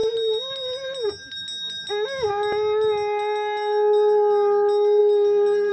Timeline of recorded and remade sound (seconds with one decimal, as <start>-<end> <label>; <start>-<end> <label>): 0.0-5.7 recorded